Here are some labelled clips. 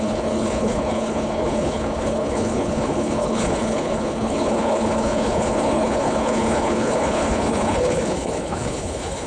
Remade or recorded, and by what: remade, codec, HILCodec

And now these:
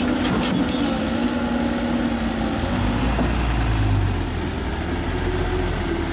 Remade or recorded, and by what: recorded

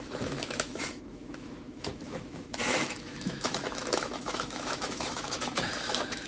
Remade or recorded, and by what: remade, autoencoder, DAC-VAE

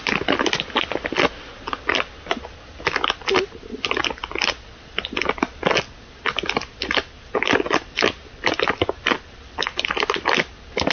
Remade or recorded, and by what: recorded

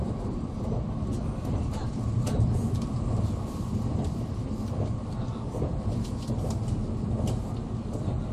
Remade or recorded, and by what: recorded